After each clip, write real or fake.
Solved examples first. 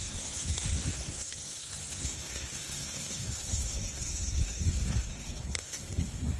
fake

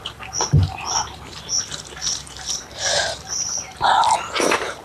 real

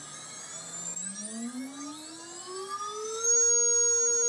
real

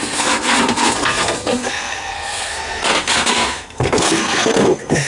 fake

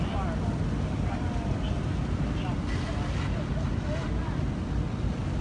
real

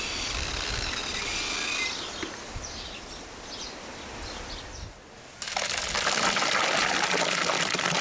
real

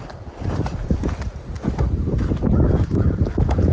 real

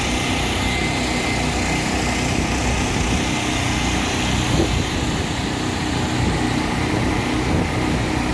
real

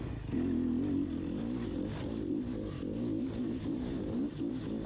real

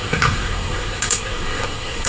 fake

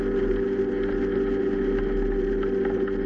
real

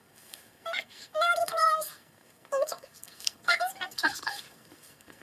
fake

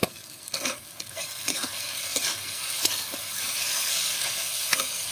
fake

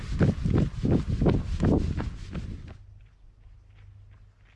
real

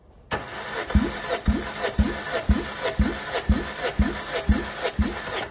real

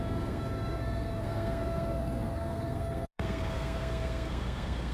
fake